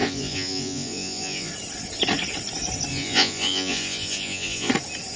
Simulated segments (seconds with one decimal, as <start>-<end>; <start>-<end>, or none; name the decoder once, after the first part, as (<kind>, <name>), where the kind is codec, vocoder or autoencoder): 0.0-1.5 (vocoder, Vocos); 2.9-4.7